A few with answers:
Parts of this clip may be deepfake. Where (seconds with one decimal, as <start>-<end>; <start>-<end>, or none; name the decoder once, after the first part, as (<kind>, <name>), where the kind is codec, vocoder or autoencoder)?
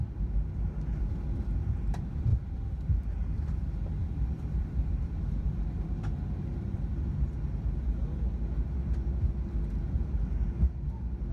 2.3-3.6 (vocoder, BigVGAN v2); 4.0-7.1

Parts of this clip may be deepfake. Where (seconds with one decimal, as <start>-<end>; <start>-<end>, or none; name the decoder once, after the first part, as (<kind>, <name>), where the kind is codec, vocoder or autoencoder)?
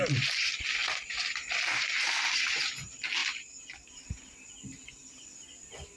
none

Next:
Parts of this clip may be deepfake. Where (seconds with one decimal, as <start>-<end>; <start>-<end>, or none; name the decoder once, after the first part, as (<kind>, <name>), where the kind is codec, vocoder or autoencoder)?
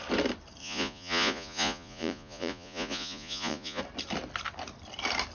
0.6-3.8 (vocoder, Vocos)